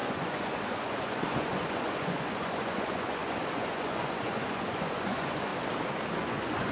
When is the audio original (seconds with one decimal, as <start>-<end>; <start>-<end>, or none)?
5.5-6.2